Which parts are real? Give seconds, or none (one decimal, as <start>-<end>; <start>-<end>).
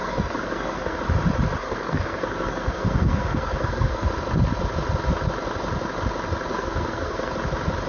1.0-1.6; 4.1-6.5; 7.3-7.9